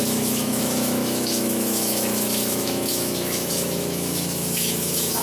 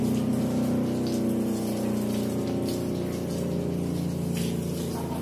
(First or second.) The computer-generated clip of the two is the first